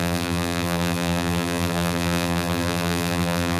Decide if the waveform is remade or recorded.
remade